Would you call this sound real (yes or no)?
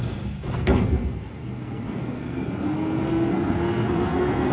no